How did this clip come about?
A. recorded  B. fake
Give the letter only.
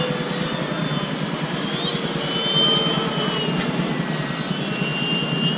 A